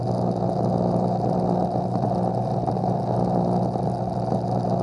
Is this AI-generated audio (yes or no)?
no